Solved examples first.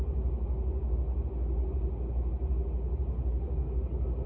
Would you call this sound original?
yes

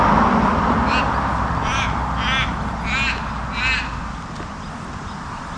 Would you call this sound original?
yes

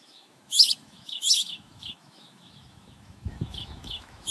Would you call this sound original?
no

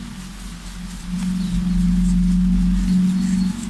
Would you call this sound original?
yes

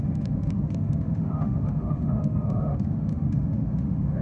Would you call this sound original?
no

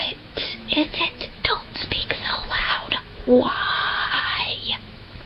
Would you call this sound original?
no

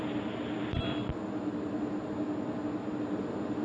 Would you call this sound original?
yes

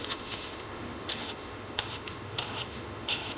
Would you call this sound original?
no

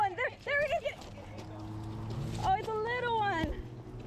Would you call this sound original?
yes